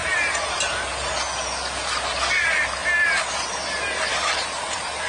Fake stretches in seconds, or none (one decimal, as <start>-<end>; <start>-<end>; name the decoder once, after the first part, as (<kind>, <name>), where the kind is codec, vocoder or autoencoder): 0.0-0.7 (vocoder, BigVGAN v2); 4.1-5.1